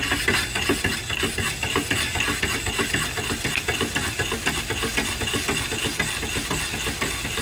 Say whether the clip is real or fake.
real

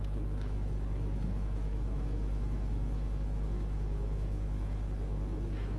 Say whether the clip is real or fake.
fake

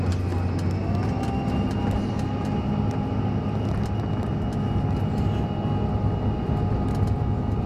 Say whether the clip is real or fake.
real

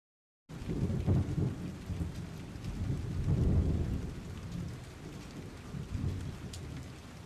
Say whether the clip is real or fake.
real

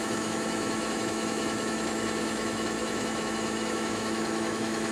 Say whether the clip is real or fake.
fake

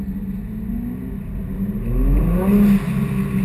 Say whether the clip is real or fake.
real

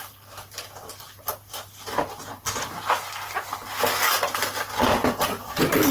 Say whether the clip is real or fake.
real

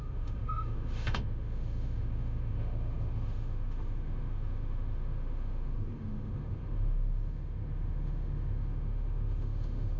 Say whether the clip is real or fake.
fake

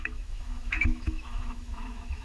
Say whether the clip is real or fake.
fake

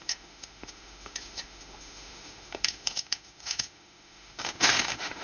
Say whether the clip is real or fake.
fake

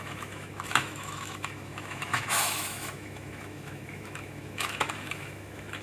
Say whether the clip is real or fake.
fake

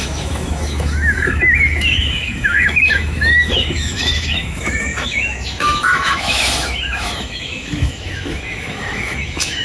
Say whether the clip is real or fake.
fake